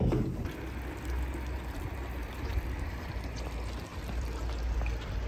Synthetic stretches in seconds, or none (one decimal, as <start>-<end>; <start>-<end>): 3.9-4.5